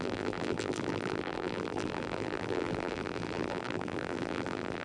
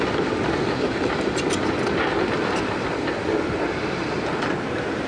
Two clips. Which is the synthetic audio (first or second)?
first